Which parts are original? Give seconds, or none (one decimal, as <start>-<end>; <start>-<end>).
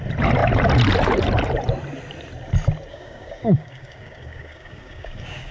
0.0-2.9